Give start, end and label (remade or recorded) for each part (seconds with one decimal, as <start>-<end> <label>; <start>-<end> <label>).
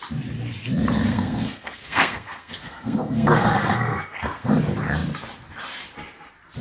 0.0-1.1 recorded; 1.1-4.5 remade; 4.5-6.6 recorded